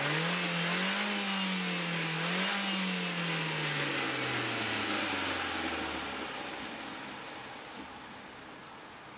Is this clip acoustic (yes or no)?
yes